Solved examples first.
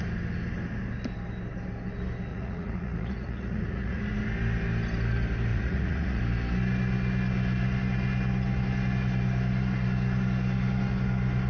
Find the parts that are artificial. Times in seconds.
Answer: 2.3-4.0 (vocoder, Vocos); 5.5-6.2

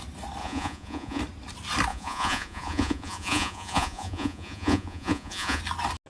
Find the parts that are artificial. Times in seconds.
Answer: 0.4-1.2 (vocoder, Vocos); 1.9-5.6

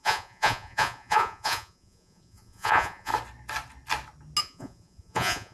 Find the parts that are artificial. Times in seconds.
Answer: 0.0-3.1 (vocoder, Vocos); 4.4-5.5

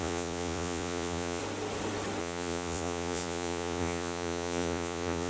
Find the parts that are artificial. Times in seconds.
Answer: 0.0-1.4 (vocoder, Vocos); 2.2-5.3

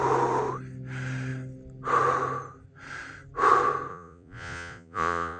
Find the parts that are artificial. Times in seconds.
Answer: 3.9-5.4 (vocoder, Vocos)

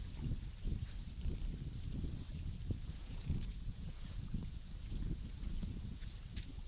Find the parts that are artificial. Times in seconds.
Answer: 2.8-6.1 (vocoder, Vocos)

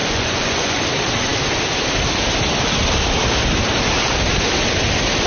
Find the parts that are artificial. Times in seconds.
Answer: 0.0-0.8 (vocoder, Vocos)